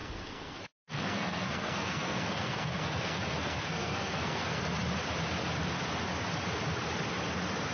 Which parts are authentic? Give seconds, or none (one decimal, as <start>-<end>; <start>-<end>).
4.6-7.7